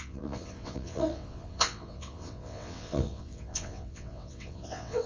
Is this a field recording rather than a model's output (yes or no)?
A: no